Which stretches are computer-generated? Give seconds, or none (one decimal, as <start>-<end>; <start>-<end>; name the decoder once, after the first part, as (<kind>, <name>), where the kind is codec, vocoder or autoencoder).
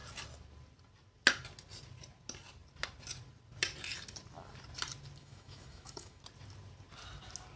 5.2-6.2 (autoencoder, DAC-VAE)